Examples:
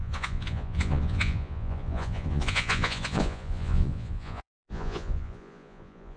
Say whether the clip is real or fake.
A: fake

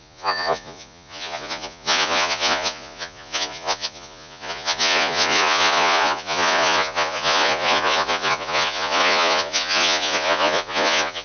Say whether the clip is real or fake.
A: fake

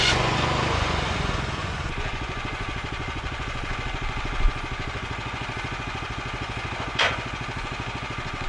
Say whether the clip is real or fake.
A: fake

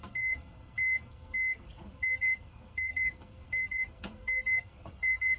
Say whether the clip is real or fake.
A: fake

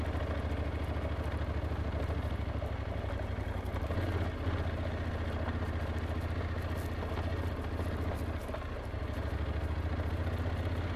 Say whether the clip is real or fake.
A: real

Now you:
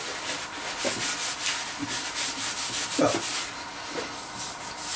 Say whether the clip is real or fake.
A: real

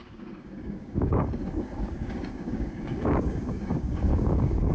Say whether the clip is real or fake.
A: fake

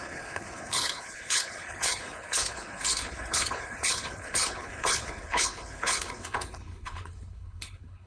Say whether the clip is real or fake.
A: fake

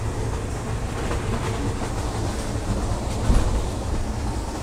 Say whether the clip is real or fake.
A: real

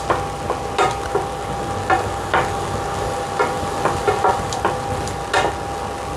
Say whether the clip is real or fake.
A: real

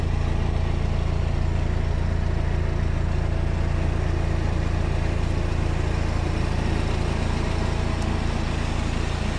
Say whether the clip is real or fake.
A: real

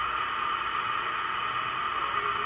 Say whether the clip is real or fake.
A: real